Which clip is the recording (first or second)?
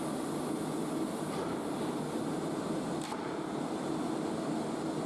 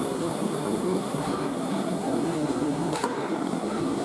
first